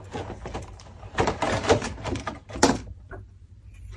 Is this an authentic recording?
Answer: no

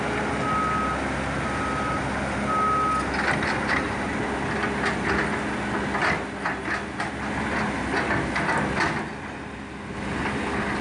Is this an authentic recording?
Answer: yes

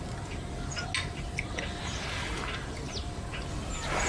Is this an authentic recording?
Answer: yes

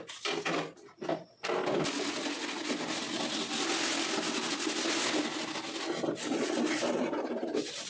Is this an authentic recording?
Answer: yes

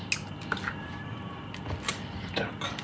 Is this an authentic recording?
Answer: yes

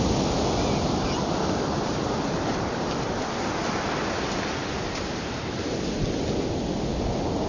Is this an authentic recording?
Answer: yes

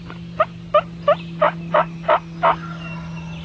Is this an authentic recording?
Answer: yes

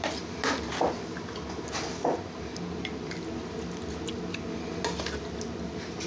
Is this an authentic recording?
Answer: yes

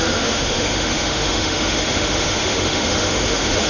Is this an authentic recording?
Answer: no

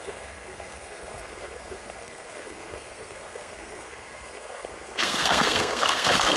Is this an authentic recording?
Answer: no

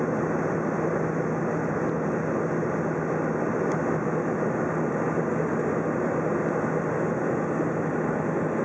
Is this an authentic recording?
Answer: yes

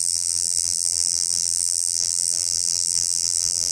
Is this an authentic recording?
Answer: no